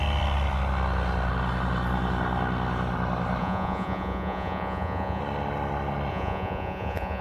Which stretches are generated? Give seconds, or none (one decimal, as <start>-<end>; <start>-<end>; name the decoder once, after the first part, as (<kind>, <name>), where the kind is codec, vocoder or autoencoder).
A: 3.4-5.2 (vocoder, Vocos); 6.1-7.2